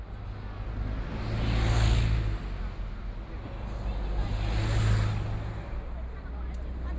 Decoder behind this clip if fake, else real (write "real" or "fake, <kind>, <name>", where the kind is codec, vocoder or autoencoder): real